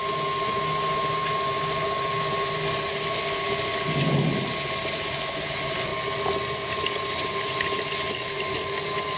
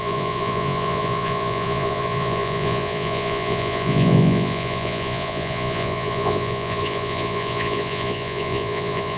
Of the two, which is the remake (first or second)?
second